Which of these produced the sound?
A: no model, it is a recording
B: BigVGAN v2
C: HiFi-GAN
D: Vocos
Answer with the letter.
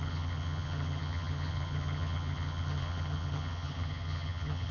C